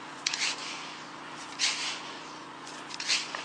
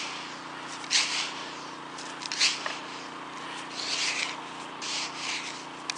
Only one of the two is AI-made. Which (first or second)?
first